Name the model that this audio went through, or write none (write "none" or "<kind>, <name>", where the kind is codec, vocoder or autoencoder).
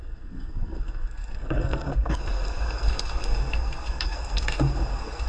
codec, SNAC